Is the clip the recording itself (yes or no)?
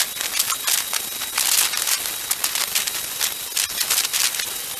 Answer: yes